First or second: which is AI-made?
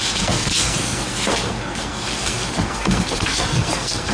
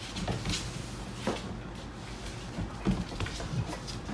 first